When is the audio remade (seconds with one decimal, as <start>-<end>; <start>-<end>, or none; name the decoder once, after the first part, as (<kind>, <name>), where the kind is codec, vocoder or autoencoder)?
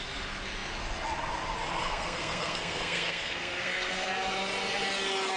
1.8-4.1 (codec, SNAC)